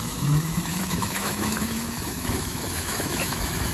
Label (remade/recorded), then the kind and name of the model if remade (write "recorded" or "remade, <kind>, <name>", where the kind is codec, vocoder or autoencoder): remade, autoencoder, DAC-VAE